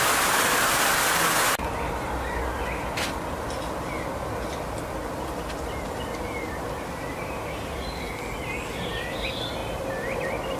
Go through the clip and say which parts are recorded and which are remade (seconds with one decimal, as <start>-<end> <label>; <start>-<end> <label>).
0.0-10.6 recorded